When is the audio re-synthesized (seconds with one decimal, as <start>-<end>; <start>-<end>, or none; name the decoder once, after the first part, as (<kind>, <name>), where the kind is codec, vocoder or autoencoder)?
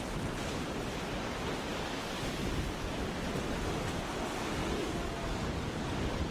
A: 4.6-6.3 (codec, DAC)